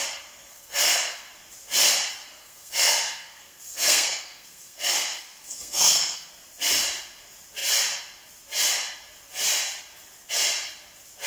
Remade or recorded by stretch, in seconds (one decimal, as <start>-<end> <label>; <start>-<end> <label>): 0.0-0.5 recorded; 0.5-1.3 remade; 1.3-2.4 recorded; 2.4-6.3 remade; 6.3-11.3 recorded

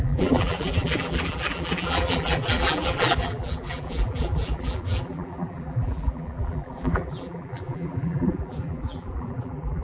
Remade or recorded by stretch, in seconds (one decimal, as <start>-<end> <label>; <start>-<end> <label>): 0.0-9.8 remade

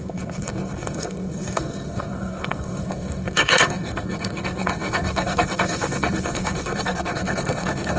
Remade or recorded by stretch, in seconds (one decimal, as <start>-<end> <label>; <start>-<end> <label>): 0.0-8.0 remade